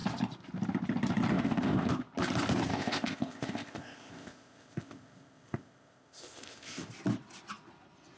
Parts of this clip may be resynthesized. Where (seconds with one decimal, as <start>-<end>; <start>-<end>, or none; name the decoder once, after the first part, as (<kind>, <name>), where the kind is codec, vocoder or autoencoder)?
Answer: 1.3-1.9 (codec, ZipCodec); 2.7-6.9

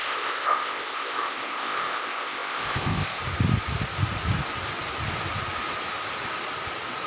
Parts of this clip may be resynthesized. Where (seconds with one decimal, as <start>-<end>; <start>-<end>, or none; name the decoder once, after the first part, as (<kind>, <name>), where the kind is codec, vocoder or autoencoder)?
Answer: 0.0-3.2 (codec, ZipCodec)

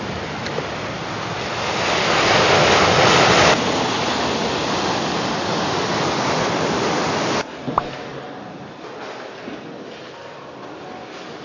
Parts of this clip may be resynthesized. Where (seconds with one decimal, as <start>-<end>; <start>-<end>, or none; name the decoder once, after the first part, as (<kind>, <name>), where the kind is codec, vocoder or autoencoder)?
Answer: none

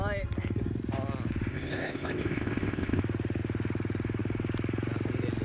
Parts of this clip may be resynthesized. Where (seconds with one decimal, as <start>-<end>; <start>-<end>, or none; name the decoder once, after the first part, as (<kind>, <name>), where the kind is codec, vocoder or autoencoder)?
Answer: 1.5-3.0 (codec, ZipCodec)

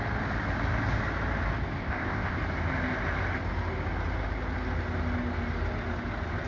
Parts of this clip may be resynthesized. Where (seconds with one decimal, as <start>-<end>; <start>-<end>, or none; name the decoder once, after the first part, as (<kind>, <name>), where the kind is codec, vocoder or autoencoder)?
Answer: 1.8-2.4 (codec, ZipCodec)

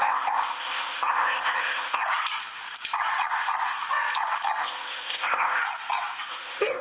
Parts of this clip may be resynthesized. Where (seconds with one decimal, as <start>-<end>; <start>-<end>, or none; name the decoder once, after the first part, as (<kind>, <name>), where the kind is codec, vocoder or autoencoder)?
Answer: 0.0-2.0 (codec, ZipCodec); 4.6-5.6; 6.3-6.8